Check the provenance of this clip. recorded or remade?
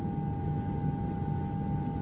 recorded